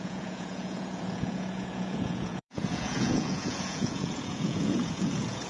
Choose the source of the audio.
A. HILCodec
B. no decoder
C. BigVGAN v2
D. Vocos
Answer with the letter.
D